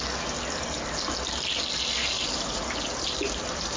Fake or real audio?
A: real